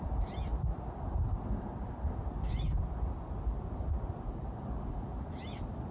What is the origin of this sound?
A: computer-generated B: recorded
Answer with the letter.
B